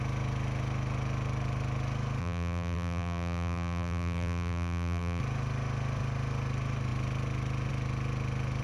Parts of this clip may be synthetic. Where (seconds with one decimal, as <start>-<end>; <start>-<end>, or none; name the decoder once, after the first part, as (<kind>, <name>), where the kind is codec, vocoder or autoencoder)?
2.2-5.2 (vocoder, BigVGAN v2)